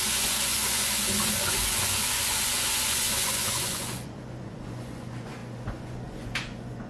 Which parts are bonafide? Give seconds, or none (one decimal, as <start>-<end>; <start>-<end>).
none